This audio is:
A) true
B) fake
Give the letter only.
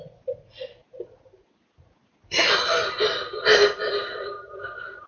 A